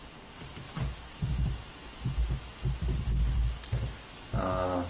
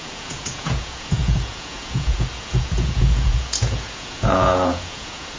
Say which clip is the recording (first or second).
first